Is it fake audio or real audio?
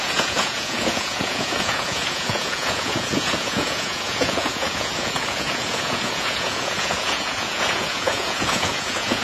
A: fake